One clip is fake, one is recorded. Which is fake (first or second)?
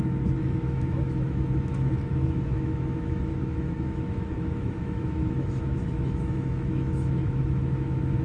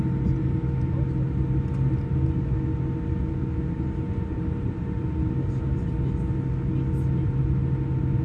first